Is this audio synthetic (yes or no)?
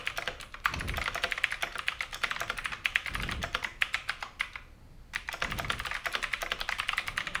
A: no